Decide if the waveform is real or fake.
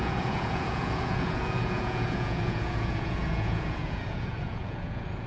fake